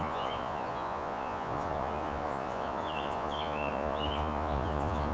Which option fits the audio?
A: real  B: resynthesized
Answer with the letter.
B